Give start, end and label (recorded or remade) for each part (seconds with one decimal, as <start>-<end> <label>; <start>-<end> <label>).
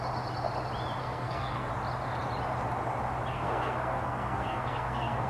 0.0-1.0 recorded; 1.0-1.7 remade; 1.7-3.3 recorded; 3.3-5.3 remade